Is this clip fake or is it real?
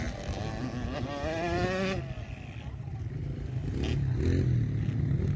real